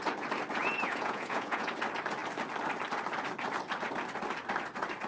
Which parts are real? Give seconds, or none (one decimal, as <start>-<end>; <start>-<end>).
0.0-0.6; 1.7-5.1